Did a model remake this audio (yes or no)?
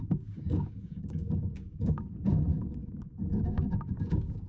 yes